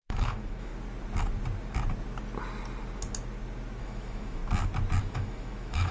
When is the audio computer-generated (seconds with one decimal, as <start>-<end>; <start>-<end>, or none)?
0.0-0.7; 3.8-4.4; 5.0-5.9